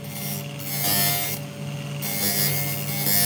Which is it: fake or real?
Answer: real